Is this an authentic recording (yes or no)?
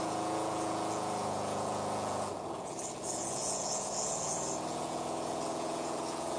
no